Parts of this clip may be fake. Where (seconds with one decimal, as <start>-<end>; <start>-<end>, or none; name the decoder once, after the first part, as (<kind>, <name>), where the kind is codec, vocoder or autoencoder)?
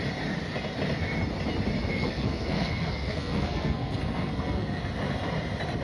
1.9-4.8 (codec, SNAC)